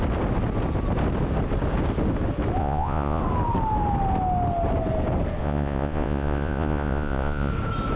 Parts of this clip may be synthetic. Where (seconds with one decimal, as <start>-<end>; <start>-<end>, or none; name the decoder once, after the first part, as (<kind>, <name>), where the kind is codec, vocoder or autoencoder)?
2.6-3.2 (vocoder, Vocos); 5.4-7.5